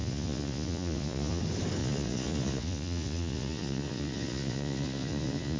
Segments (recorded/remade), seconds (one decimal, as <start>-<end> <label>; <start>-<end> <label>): 0.0-1.4 remade; 1.4-1.8 recorded; 1.8-5.6 remade